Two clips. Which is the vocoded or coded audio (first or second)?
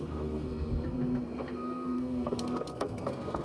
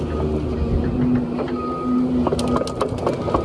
first